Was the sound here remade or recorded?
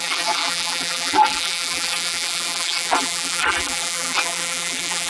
remade